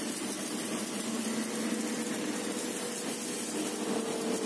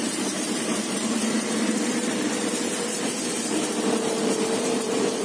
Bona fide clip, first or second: first